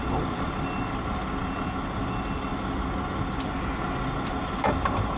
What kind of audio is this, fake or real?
real